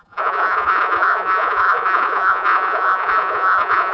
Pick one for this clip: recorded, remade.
remade